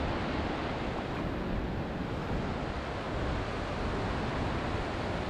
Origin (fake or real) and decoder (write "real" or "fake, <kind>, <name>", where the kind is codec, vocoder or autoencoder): real